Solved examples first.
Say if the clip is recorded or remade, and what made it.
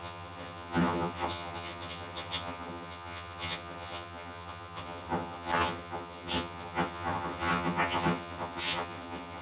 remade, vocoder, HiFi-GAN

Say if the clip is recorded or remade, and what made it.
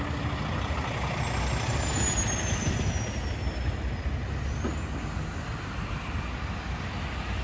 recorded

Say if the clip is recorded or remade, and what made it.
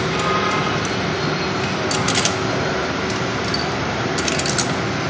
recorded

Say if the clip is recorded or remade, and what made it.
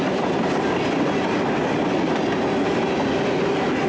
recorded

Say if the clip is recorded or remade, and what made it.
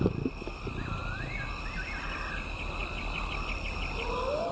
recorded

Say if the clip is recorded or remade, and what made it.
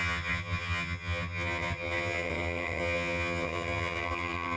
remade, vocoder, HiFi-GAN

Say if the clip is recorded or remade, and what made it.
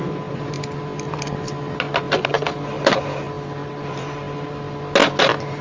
recorded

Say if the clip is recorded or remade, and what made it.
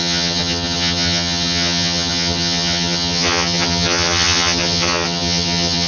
remade, vocoder, HiFi-GAN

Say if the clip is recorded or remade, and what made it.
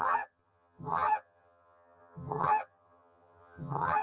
remade, vocoder, HiFi-GAN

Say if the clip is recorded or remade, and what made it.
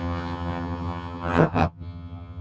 remade, vocoder, HiFi-GAN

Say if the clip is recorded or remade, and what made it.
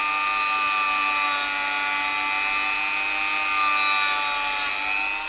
recorded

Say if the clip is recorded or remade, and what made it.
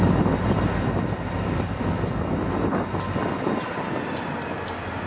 recorded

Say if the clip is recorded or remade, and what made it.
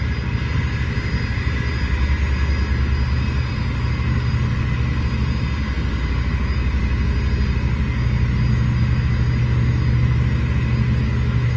recorded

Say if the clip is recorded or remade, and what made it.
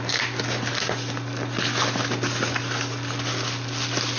recorded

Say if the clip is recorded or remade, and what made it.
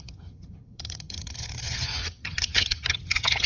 remade, vocoder, HiFi-GAN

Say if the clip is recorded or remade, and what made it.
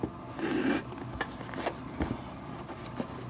recorded